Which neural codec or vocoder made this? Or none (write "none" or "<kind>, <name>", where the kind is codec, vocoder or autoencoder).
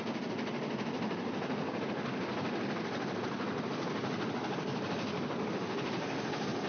none